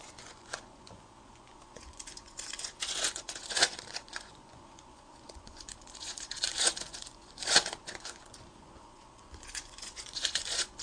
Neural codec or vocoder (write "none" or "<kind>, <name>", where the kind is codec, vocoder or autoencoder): vocoder, Vocos